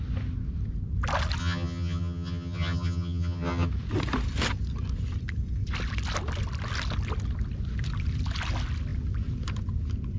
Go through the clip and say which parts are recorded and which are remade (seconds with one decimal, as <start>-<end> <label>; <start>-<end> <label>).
0.0-1.4 recorded; 1.4-3.7 remade; 3.7-10.2 recorded